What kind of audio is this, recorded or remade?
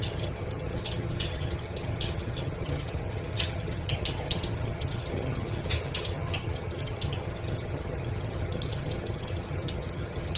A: remade